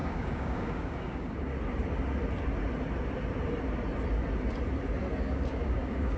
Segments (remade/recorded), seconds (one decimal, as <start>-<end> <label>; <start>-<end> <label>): 0.0-1.5 remade; 1.5-5.2 recorded; 5.2-6.2 remade